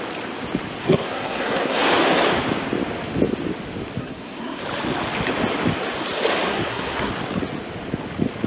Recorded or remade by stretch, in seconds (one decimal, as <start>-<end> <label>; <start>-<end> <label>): 0.0-0.8 recorded; 0.8-1.9 remade; 1.9-4.0 recorded; 4.0-4.6 remade; 4.6-6.5 recorded; 6.5-7.1 remade; 7.1-8.5 recorded